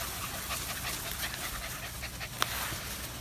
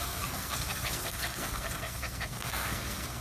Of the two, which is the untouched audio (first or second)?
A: first